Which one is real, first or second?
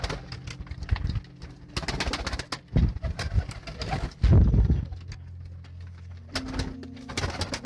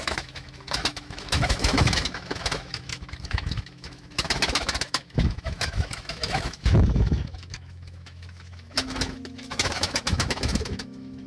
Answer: first